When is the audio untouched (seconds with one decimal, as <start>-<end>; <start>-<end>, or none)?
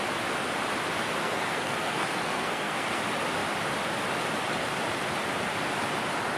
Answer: 0.0-1.2; 3.0-6.4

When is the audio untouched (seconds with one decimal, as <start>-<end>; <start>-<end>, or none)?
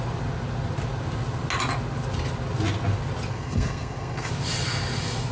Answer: 0.0-3.3; 4.3-5.3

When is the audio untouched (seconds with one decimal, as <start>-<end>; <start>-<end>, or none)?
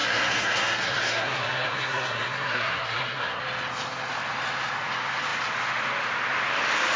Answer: 3.4-7.0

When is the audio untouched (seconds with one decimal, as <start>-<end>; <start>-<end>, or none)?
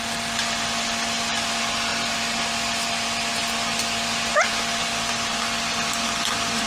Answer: 0.0-6.7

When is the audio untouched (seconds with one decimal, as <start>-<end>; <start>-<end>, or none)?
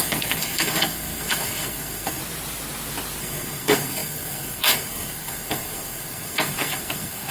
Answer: 2.2-3.2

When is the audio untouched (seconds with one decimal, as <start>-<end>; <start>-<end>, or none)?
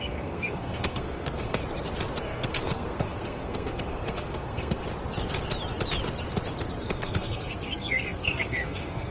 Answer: 1.6-2.2; 4.8-6.8